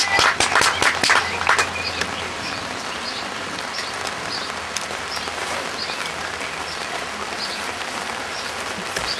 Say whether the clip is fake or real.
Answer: fake